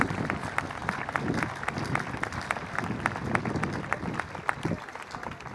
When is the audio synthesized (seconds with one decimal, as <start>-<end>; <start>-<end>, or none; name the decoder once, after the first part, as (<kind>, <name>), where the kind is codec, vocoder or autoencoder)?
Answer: none

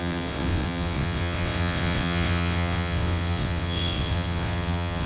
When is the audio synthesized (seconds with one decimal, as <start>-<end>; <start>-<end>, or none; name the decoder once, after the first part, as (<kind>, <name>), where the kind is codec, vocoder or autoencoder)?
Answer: 0.0-5.1 (vocoder, WaveNeXt)

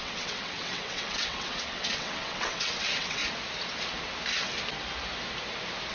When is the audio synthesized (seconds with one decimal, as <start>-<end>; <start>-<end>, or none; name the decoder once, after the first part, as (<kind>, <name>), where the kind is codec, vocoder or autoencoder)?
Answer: 0.0-3.2 (vocoder, WaveNeXt)

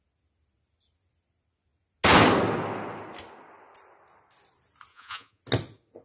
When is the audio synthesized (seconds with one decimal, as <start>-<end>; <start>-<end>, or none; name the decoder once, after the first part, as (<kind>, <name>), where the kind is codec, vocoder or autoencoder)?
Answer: 4.9-5.4 (vocoder, Vocos)